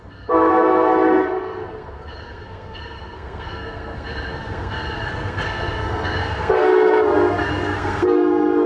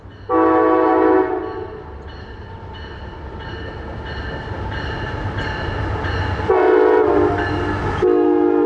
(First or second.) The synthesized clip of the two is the first